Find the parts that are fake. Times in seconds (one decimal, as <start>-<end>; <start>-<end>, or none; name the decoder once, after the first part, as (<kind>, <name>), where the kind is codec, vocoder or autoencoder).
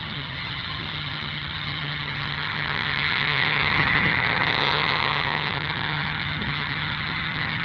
0.0-7.6 (vocoder, HiFi-GAN)